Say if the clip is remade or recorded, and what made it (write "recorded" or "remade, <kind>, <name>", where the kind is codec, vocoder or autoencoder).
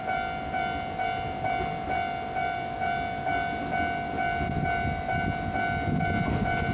recorded